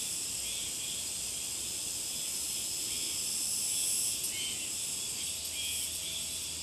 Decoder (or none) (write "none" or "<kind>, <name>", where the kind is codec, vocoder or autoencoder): none